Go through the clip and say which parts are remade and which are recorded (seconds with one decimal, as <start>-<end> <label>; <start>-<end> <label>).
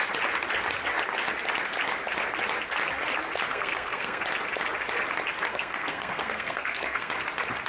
0.0-3.5 recorded; 3.5-4.2 remade; 4.2-5.5 recorded; 5.5-7.1 remade; 7.1-7.7 recorded